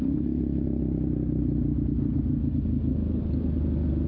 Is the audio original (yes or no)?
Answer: yes